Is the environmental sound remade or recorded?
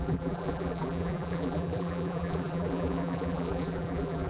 remade